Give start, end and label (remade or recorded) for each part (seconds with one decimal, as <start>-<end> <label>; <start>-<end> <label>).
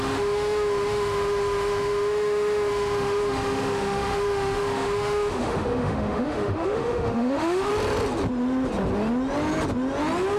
0.0-7.7 remade; 7.7-10.4 recorded